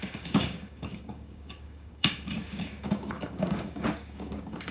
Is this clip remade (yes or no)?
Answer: yes